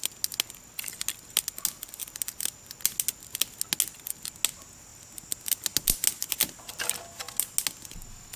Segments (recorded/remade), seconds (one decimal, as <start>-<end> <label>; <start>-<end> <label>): 0.0-8.4 recorded

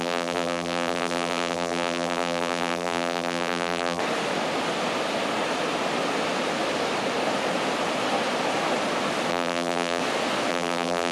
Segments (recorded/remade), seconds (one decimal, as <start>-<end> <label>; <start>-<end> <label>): 0.0-4.0 remade; 4.0-9.3 recorded; 9.3-10.0 remade; 10.0-10.5 recorded; 10.5-11.1 remade